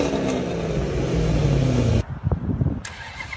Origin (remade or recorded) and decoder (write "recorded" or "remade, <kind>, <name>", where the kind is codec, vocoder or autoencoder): recorded